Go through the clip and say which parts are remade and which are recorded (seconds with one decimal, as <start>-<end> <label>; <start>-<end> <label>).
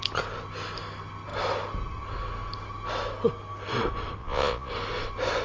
0.0-4.2 recorded; 4.2-4.7 remade; 4.7-5.4 recorded